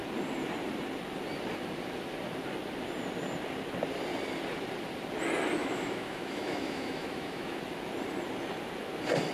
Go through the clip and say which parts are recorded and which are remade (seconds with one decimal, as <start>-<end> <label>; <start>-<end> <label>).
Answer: 0.0-5.6 recorded; 5.6-7.6 remade; 7.6-9.3 recorded

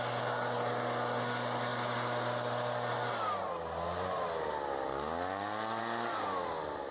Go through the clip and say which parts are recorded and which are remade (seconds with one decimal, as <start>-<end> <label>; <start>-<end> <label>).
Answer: 0.0-6.9 recorded